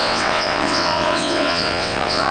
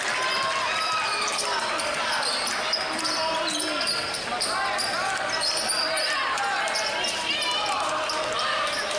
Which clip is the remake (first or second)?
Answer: first